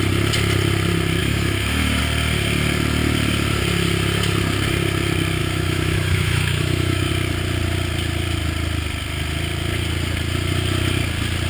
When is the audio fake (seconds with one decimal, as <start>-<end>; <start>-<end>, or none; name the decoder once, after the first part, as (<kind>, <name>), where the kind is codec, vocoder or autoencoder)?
1.2-2.0 (autoencoder, DAC-VAE); 5.4-7.1